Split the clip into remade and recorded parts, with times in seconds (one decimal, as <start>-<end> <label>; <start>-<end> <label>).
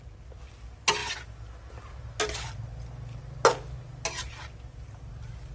0.0-5.5 recorded